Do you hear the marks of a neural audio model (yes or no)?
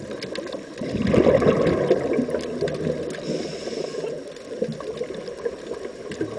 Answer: no